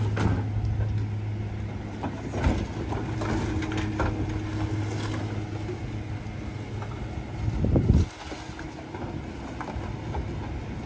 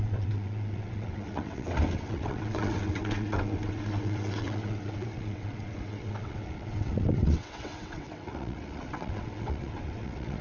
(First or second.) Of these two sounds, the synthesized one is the second